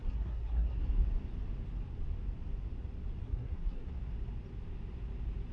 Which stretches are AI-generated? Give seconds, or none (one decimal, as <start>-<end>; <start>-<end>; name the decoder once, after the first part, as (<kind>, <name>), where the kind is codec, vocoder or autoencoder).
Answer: 0.0-0.8 (codec, SNAC); 3.2-3.9